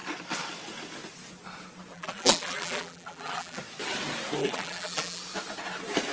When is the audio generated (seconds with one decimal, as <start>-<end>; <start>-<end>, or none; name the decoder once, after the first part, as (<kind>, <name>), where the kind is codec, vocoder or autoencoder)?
1.9-3.6 (vocoder, BigVGAN v2); 4.4-5.2